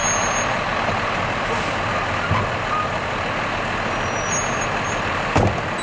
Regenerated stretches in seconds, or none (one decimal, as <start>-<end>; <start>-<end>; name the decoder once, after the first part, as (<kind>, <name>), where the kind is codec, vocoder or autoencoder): none